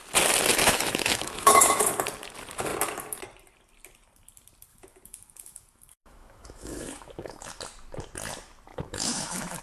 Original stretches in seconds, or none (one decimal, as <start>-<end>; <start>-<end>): 0.0-0.5; 1.9-4.7; 7.6-8.7